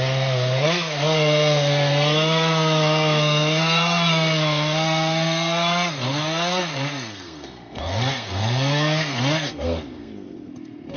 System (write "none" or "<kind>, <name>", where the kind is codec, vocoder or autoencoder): codec, SNAC